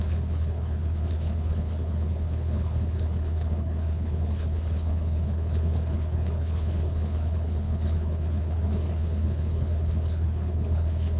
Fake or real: fake